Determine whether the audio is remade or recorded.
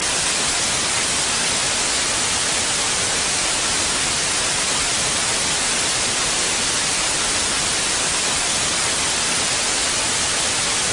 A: recorded